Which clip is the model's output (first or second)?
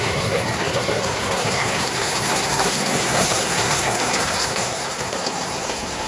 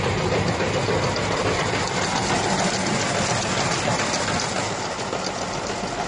first